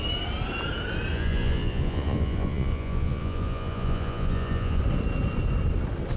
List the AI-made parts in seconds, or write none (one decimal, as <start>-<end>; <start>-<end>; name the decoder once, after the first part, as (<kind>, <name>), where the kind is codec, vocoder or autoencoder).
1.1-4.8 (vocoder, Vocos)